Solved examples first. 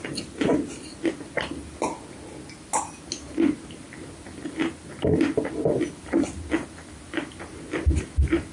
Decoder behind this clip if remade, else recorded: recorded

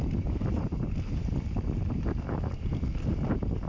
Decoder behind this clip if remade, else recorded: recorded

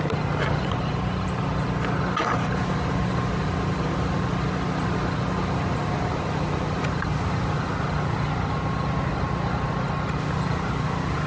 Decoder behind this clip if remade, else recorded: recorded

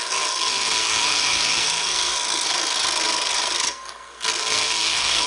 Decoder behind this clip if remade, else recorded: remade, codec, SNAC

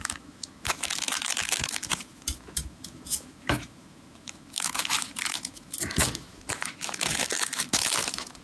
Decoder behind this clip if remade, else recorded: remade, autoencoder, DAC-VAE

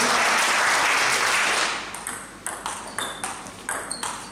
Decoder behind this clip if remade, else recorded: recorded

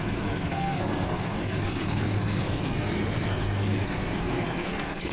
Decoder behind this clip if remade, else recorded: remade, codec, SNAC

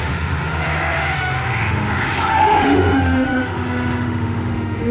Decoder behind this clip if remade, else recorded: remade, autoencoder, DAC-VAE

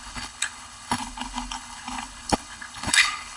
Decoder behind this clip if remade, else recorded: remade, codec, HILCodec